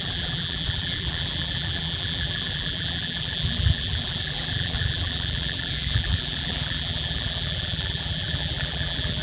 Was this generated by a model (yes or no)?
yes